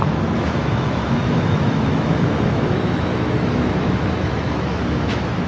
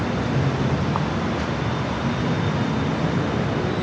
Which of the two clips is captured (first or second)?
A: second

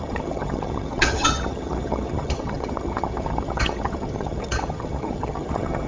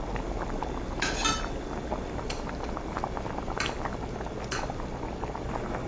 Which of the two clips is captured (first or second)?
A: second